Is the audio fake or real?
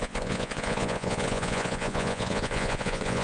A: fake